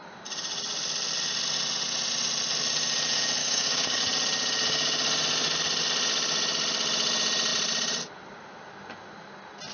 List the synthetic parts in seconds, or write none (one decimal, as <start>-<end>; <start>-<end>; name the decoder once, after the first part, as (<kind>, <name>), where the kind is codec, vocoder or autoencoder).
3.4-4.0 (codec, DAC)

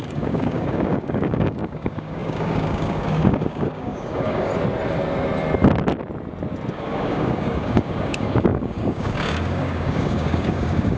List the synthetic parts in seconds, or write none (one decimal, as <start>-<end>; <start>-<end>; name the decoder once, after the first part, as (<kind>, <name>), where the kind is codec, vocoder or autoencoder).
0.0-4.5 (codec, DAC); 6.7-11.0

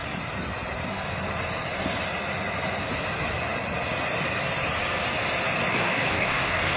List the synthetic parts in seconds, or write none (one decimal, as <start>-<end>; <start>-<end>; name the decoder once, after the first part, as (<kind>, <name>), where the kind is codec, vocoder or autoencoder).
5.7-6.8 (codec, DAC)

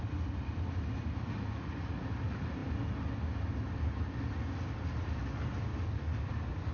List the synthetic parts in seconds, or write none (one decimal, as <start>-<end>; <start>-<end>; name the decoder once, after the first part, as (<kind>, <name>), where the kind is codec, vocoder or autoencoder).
5.7-6.7 (codec, DAC)

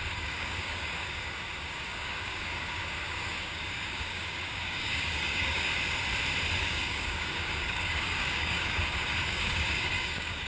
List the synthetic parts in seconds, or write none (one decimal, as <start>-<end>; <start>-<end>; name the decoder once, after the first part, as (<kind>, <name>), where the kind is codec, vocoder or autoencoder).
0.0-5.7 (codec, DAC); 6.6-10.5

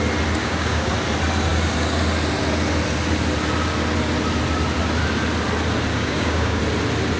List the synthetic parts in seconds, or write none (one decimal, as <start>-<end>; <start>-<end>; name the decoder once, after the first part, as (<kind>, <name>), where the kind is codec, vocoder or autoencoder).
0.4-0.9 (codec, DAC); 5.9-6.6

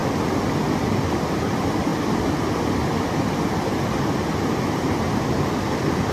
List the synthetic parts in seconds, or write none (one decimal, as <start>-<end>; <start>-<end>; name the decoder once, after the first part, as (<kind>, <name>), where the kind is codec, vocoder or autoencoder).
none

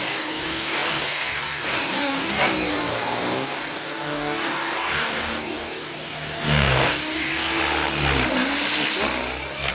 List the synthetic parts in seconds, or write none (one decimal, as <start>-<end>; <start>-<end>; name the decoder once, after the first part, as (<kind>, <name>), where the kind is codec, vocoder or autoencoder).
0.0-7.6 (codec, DAC)